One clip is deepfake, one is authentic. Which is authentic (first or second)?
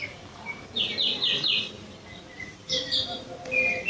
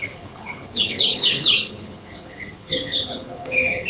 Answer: first